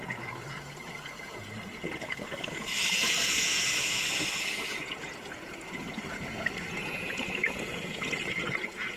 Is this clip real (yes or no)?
no